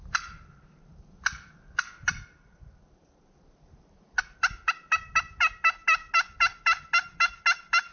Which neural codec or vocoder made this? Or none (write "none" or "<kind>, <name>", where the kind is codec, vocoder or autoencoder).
none